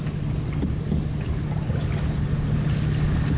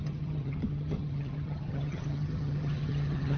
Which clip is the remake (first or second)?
second